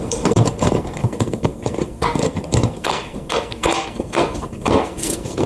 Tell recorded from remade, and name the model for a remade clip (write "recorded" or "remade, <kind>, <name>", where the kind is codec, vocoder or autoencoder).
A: remade, codec, SNAC